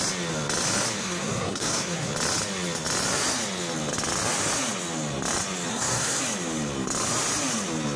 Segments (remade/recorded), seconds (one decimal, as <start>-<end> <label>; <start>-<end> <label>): 0.0-1.0 recorded; 1.0-2.1 remade; 2.1-5.7 recorded; 5.7-6.2 remade; 6.2-8.0 recorded